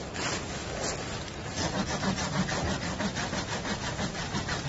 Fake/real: real